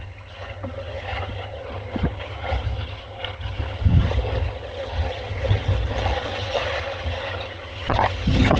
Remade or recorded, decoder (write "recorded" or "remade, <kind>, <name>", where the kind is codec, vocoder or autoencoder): remade, vocoder, HiFi-GAN